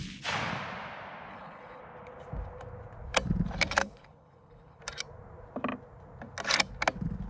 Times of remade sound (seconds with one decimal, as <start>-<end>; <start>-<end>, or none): 1.3-1.8; 3.8-4.8